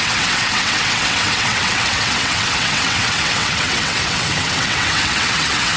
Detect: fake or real fake